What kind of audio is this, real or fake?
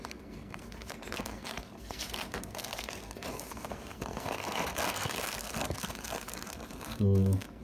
fake